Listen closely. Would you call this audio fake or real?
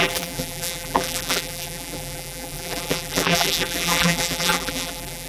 fake